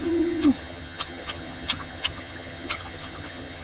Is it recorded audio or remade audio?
remade